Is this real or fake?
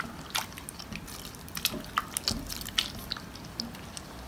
real